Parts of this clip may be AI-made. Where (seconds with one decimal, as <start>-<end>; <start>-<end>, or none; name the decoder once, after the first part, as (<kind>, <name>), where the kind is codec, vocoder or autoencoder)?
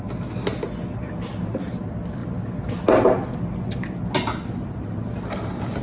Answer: none